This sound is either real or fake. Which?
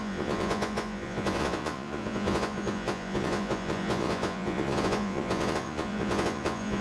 fake